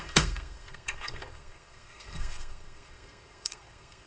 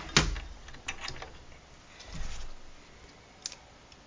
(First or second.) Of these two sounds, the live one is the second